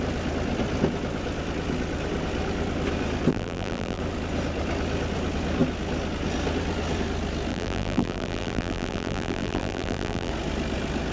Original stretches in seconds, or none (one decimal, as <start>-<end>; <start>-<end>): 0.0-3.3; 4.0-7.5; 10.3-11.1